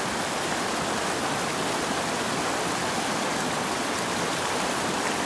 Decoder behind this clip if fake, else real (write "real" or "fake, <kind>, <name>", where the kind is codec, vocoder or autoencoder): real